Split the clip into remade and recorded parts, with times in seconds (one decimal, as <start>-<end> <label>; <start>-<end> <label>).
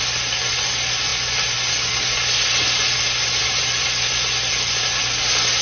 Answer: 0.0-3.4 recorded; 3.4-5.0 remade; 5.0-5.6 recorded